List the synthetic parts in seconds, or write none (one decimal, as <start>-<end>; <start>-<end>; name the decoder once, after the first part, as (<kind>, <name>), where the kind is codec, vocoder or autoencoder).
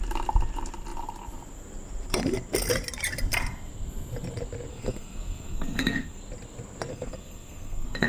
4.7-6.2 (codec, SNAC); 6.9-8.1